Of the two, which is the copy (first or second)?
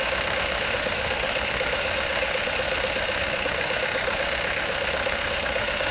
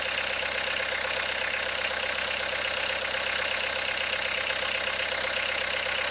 first